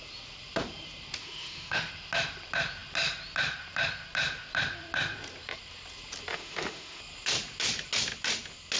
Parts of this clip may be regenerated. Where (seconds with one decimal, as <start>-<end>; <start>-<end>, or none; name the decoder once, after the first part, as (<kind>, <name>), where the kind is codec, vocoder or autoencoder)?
1.2-1.9 (autoencoder, DAC-VAE); 6.3-7.0